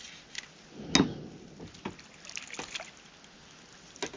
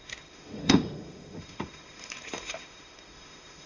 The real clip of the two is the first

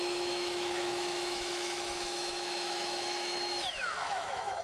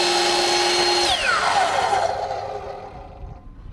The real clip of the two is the second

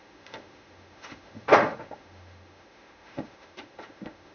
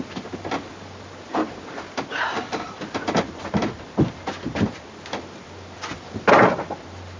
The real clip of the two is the second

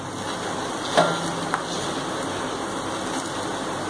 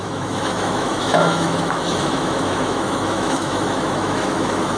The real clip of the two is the first